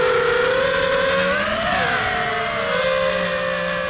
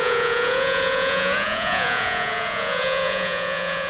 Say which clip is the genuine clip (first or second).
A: first